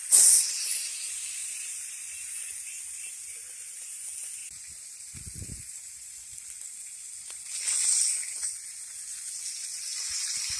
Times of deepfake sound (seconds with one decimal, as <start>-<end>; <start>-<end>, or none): 1.4-1.9